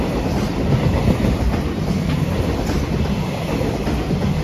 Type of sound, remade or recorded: recorded